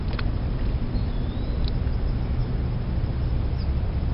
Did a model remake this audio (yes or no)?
no